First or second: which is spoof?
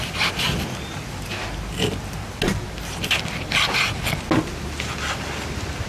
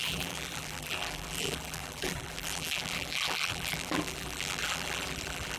second